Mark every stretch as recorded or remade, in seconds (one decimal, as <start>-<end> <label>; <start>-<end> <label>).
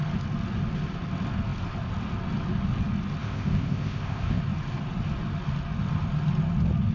0.0-3.2 recorded; 3.2-4.4 remade; 4.4-6.9 recorded